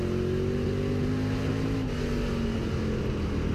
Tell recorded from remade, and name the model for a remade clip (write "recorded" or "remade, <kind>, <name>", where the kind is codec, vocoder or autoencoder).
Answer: recorded